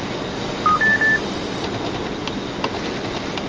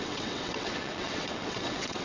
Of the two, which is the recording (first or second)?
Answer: first